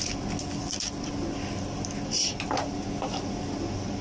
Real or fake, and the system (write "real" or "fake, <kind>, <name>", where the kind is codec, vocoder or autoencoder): real